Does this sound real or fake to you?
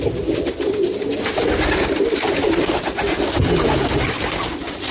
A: real